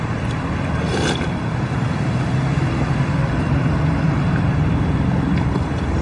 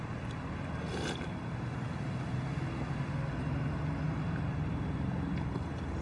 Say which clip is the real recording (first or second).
second